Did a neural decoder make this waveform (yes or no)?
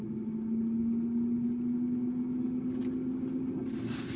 no